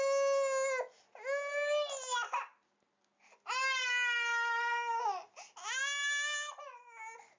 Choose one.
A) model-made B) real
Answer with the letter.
B